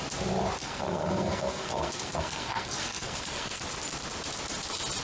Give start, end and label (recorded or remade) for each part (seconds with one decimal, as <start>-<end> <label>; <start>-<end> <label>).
0.0-0.6 recorded; 0.6-3.6 remade; 3.6-5.0 recorded